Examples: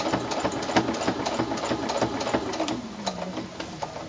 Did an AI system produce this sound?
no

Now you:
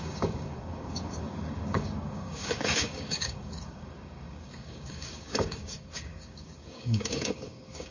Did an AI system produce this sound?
yes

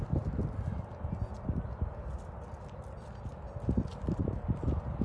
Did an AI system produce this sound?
no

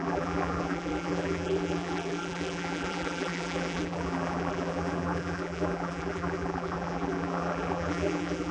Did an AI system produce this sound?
yes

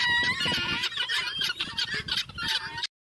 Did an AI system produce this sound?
no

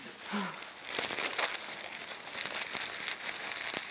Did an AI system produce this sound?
no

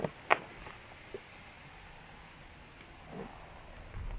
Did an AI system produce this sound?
no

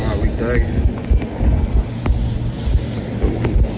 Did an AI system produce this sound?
no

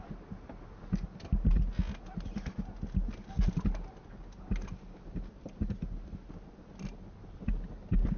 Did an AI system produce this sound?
no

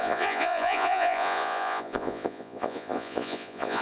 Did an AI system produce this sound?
yes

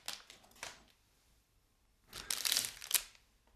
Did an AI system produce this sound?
no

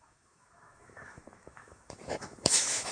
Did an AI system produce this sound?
yes